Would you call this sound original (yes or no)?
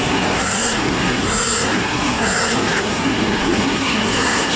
no